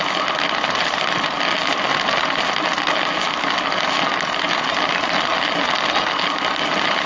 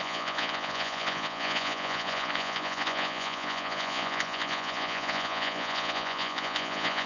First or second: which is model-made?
second